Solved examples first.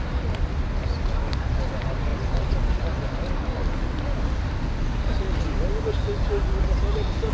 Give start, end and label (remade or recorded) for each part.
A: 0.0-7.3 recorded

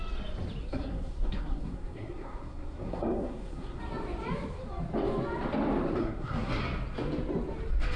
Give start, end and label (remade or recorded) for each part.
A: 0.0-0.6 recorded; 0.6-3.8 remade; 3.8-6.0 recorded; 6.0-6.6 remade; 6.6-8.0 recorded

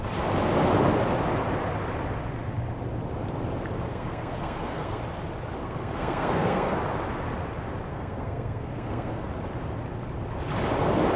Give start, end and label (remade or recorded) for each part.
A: 0.0-3.9 recorded; 3.9-5.0 remade; 5.0-5.6 recorded; 5.6-6.8 remade; 6.8-7.9 recorded; 7.9-9.3 remade; 9.3-11.2 recorded